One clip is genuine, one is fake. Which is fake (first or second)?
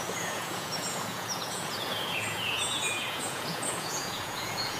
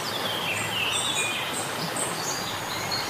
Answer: first